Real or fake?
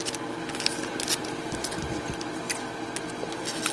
real